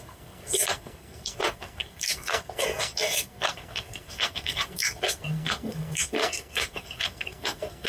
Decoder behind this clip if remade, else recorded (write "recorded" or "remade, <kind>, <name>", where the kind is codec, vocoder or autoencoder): remade, codec, SNAC